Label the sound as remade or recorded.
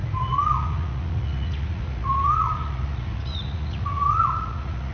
remade